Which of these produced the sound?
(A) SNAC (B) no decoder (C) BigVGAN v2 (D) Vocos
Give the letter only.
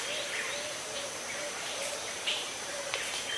C